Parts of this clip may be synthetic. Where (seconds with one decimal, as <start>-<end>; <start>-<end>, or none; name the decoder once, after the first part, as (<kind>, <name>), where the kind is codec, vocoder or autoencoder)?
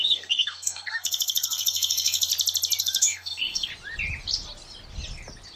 0.0-2.3 (codec, SNAC); 2.8-3.7